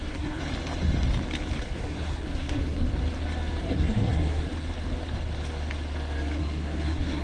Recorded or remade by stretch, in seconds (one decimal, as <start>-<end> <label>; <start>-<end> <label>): 0.0-0.4 remade; 0.4-1.6 recorded; 1.6-2.9 remade; 2.9-3.6 recorded; 3.6-4.5 remade; 4.5-6.4 recorded; 6.4-7.2 remade